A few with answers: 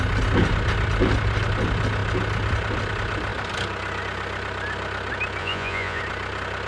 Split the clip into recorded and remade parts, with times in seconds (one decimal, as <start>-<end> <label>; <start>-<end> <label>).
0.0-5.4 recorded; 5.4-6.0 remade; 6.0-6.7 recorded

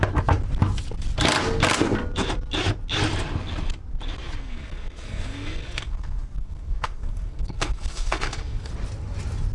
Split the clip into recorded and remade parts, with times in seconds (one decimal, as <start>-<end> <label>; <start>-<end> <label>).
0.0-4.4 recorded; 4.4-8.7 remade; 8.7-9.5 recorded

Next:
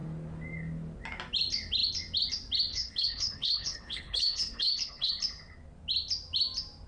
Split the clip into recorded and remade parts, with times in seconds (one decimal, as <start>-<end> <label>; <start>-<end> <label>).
0.0-2.7 recorded; 2.7-5.1 remade; 5.1-6.9 recorded

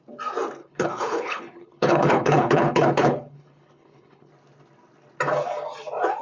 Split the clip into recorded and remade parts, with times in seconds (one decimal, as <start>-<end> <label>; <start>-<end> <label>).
0.0-0.6 recorded; 0.6-4.3 remade; 4.3-6.2 recorded

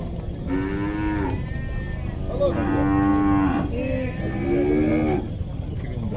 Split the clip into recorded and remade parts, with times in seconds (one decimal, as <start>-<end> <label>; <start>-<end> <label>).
0.0-6.2 recorded